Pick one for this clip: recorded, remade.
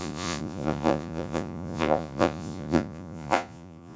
remade